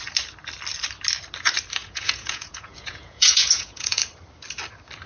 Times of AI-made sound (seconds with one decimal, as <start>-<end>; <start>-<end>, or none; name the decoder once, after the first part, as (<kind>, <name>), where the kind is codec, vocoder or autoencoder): 1.8-4.0 (vocoder, Vocos)